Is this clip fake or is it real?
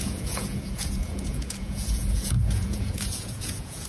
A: fake